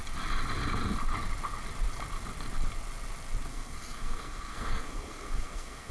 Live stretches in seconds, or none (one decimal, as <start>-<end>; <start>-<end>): 0.0-3.5